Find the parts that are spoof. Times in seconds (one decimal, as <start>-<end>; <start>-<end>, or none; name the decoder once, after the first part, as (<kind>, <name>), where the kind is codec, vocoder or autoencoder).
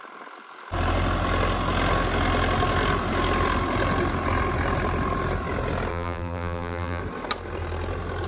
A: 5.9-7.0 (vocoder, BigVGAN v2)